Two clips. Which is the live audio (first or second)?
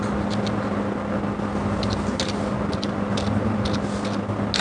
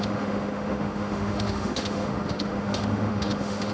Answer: first